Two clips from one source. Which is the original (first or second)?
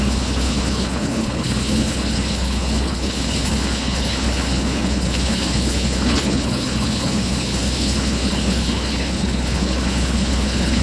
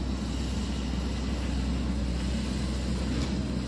second